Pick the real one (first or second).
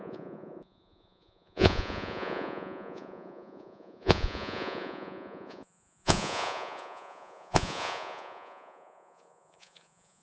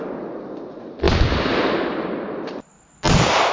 second